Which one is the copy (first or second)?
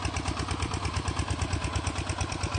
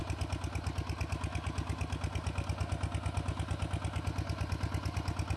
first